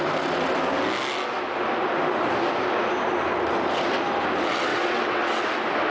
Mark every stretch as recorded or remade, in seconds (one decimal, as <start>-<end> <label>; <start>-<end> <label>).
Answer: 0.0-4.7 recorded; 4.7-5.4 remade; 5.4-5.9 recorded

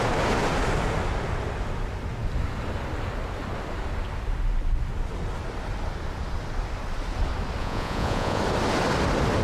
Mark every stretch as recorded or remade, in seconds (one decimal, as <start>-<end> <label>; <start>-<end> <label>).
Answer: 0.0-7.6 recorded; 7.6-8.4 remade; 8.4-9.4 recorded

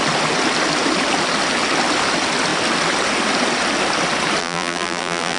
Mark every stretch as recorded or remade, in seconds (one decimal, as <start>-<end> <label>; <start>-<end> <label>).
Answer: 0.0-4.4 recorded; 4.4-5.4 remade

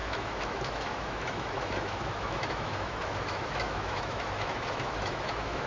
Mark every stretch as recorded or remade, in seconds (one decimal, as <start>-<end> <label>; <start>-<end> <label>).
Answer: 0.0-5.7 remade

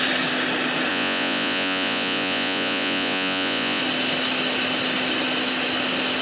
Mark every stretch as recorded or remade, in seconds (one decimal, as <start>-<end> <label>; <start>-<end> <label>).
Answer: 0.0-0.9 recorded; 0.9-3.8 remade; 3.8-6.2 recorded

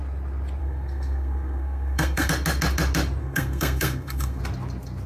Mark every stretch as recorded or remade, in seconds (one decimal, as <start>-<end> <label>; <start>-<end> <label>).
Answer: 0.0-0.6 recorded; 0.6-2.3 remade; 2.3-3.2 recorded; 3.2-4.4 remade; 4.4-5.1 recorded

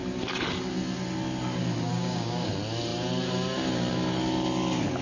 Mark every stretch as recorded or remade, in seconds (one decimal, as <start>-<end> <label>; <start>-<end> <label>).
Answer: 0.0-1.9 recorded; 1.9-2.5 remade; 2.5-5.0 recorded